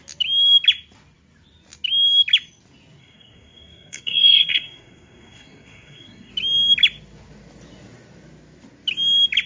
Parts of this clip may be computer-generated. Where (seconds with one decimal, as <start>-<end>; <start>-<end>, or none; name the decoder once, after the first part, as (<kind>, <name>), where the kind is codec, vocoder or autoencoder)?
3.0-6.3 (codec, SNAC)